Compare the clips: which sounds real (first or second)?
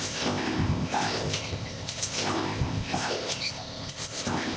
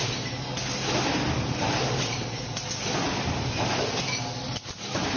second